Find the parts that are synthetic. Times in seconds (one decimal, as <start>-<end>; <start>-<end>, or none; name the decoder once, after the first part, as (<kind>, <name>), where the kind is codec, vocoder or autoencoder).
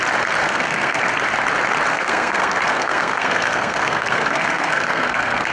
0.4-1.0 (codec, SNAC); 1.9-5.5